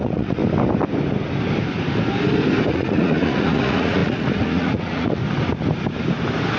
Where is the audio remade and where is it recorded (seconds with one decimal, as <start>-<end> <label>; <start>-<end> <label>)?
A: 0.0-0.4 remade; 0.4-2.7 recorded; 2.7-5.2 remade; 5.2-6.6 recorded